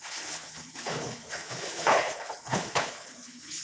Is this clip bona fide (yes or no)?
no